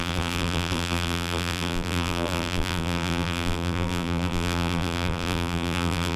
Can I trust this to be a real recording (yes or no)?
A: no